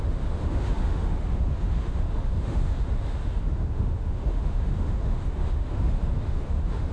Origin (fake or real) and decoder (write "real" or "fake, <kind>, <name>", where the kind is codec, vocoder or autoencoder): fake, autoencoder, DAC-VAE